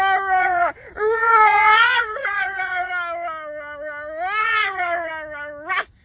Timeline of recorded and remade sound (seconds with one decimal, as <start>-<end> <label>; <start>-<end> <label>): 0.0-0.4 recorded; 0.4-2.9 remade; 2.9-4.4 recorded; 4.4-5.1 remade; 5.1-6.0 recorded